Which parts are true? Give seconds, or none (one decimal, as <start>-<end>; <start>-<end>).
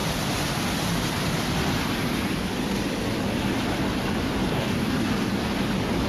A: 0.0-4.5; 5.3-6.1